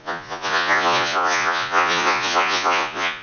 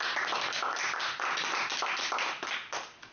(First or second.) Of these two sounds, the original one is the second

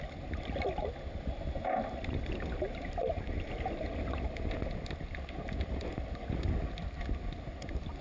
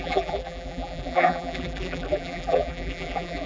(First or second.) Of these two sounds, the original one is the first